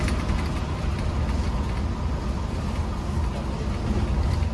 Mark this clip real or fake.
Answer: real